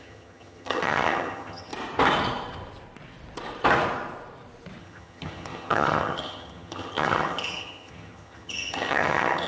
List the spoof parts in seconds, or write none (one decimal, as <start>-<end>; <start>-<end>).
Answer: 0.0-1.7; 4.8-9.5

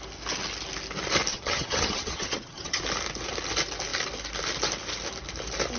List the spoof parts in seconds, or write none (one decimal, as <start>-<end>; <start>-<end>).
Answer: 1.3-2.8